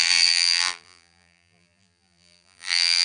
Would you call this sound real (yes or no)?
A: no